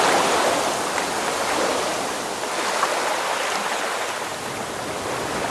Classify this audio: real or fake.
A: real